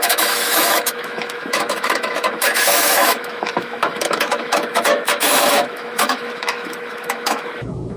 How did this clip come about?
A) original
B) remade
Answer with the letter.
B